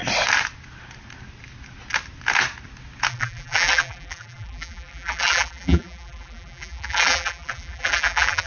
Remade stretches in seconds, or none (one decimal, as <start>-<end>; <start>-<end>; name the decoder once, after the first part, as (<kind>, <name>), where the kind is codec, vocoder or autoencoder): 3.1-8.5 (vocoder, BigVGAN v2)